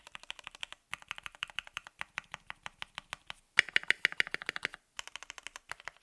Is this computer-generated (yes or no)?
no